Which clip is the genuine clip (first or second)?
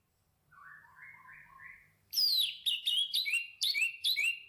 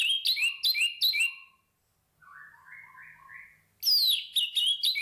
second